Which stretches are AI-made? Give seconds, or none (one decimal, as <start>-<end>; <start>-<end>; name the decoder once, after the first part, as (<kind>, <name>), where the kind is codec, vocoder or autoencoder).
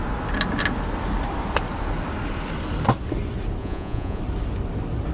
3.6-4.2 (vocoder, Vocos)